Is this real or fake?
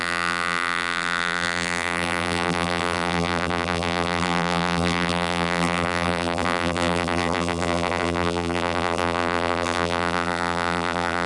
fake